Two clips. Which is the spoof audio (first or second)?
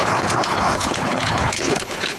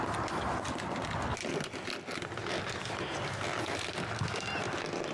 first